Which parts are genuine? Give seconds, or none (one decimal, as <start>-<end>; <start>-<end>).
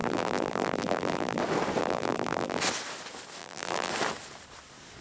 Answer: 1.4-1.8; 2.6-3.4; 3.9-5.0